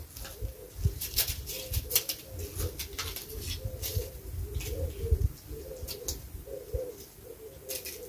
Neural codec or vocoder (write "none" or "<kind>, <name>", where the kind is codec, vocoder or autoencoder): none